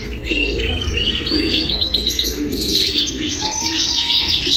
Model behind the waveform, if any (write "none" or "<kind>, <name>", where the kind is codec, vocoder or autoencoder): codec, SNAC